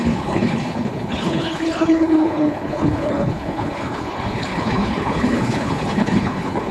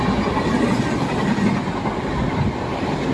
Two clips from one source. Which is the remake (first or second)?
first